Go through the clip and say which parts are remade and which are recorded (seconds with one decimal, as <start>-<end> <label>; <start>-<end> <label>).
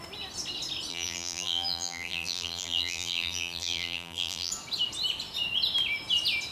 0.0-0.9 recorded; 0.9-4.5 remade; 4.5-6.5 recorded